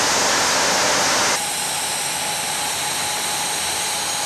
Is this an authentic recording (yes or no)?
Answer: yes